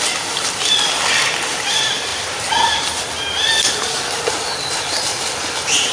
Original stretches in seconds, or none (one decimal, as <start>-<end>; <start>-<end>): 0.0-5.9